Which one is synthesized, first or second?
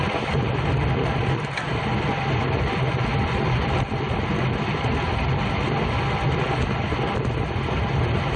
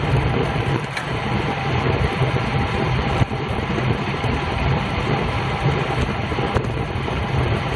second